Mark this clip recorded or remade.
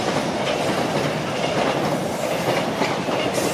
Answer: recorded